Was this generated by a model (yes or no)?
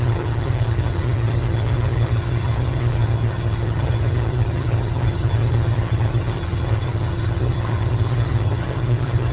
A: yes